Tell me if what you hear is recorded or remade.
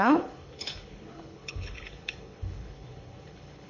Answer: remade